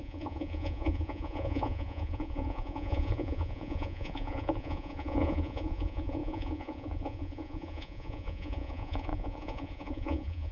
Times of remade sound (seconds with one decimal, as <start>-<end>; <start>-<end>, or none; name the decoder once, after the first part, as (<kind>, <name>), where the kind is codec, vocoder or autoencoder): 0.0-10.5 (vocoder, Vocos)

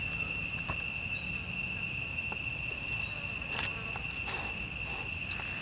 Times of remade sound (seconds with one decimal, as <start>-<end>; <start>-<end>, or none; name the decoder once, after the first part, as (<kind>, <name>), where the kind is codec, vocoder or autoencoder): none

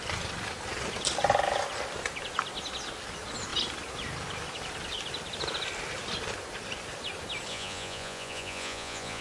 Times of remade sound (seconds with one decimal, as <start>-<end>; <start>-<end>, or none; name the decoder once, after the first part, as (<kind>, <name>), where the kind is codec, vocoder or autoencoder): 7.5-9.2 (vocoder, Vocos)

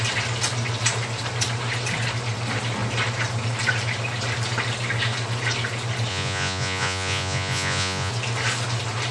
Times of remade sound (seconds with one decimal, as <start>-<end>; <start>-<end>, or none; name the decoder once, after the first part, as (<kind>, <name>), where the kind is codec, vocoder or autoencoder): 6.1-8.1 (vocoder, Vocos)

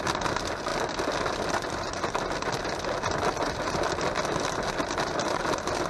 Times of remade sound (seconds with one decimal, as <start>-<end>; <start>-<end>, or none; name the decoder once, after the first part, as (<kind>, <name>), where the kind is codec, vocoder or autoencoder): none